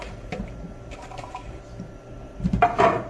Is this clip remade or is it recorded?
remade